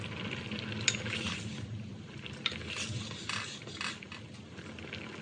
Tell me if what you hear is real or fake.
real